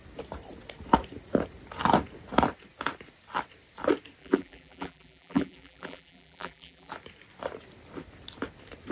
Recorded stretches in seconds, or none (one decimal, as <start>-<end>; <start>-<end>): 0.0-4.2; 6.9-8.9